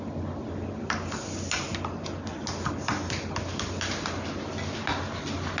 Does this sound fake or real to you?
real